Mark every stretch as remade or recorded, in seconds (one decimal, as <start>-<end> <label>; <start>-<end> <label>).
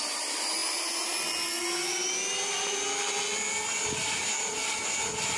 0.0-5.4 recorded